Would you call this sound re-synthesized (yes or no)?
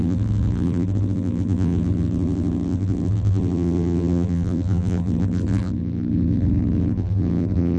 yes